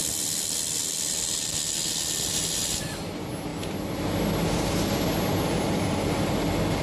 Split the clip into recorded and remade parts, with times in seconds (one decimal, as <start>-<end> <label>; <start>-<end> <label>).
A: 0.0-6.8 recorded